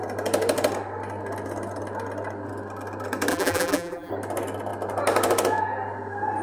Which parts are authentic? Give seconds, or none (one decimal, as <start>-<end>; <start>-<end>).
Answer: 0.0-3.3; 4.1-6.4